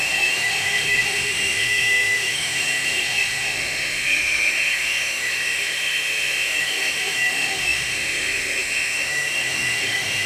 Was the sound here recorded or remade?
remade